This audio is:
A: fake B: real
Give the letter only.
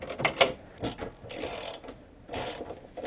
B